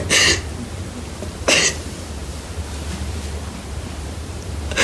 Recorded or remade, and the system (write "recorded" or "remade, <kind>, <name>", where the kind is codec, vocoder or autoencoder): recorded